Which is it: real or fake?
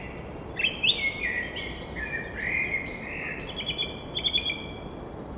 real